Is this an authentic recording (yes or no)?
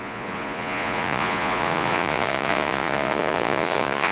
no